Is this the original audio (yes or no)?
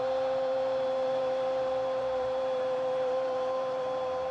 no